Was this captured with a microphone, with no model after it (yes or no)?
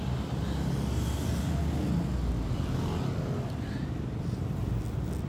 yes